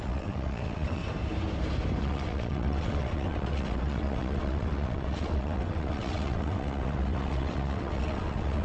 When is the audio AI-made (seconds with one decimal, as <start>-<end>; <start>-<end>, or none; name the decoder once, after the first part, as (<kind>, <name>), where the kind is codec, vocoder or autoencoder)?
0.0-1.0 (vocoder, WaveNeXt); 2.0-8.6